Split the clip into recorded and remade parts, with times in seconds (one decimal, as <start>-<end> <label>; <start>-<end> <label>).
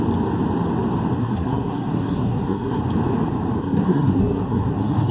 0.0-1.2 recorded; 1.2-2.8 remade; 2.8-3.6 recorded; 3.6-5.1 remade